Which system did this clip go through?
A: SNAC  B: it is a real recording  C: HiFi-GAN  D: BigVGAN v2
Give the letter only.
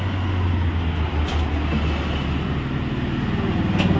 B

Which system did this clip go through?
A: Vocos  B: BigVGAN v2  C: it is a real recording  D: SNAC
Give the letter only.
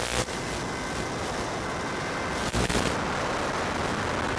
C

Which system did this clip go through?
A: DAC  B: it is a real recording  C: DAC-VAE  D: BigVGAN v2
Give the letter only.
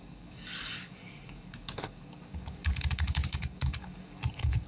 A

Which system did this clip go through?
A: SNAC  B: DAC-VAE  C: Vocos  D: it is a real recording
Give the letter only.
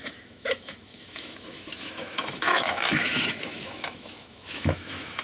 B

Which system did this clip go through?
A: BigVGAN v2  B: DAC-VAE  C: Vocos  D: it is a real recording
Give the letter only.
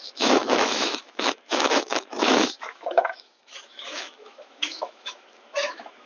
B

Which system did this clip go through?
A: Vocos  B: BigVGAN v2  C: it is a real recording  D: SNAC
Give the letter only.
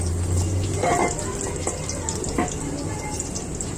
C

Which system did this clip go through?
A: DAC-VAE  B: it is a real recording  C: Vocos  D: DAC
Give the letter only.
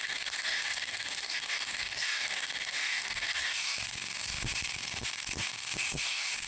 D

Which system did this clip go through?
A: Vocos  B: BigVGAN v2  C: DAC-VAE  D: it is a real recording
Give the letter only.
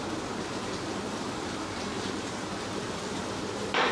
B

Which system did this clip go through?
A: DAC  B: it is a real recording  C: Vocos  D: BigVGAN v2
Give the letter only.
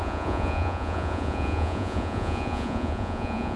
C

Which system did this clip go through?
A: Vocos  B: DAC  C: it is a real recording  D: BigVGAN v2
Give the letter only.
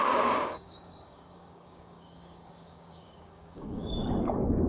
B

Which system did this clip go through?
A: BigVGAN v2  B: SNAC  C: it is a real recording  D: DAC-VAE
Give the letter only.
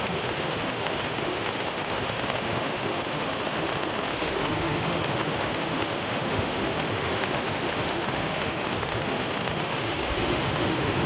D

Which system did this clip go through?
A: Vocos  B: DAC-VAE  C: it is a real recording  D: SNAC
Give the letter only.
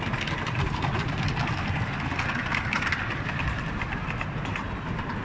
C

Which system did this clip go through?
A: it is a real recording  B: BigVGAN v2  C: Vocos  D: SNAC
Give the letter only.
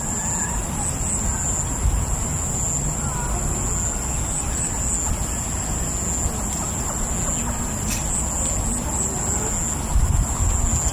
A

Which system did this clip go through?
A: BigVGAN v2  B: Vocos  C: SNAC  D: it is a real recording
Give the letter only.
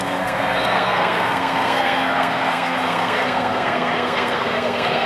C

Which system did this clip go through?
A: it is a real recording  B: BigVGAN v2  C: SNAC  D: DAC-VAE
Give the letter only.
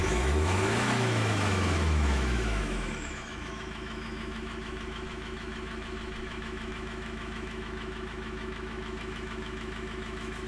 D